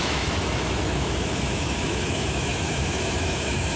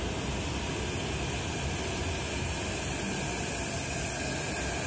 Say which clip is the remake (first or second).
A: first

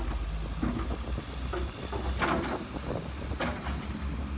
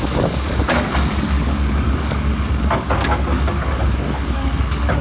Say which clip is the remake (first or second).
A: second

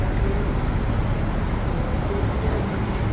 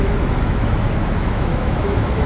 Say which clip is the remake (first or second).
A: second